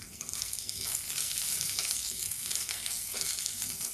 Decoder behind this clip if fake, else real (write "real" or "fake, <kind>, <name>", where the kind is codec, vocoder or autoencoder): fake, codec, SNAC